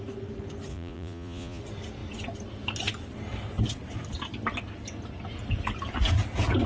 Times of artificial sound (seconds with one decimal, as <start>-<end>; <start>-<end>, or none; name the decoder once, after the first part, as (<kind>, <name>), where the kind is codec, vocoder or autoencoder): 0.7-1.6 (vocoder, Vocos)